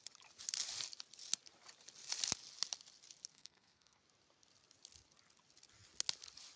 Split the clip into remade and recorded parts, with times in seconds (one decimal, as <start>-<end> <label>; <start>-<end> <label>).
0.0-3.3 recorded; 3.3-4.0 remade; 4.0-6.6 recorded